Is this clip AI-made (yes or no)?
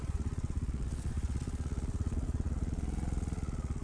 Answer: yes